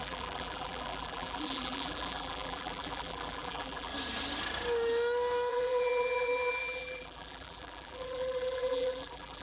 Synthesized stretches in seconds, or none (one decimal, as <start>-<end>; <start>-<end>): 0.0-3.9; 5.5-9.4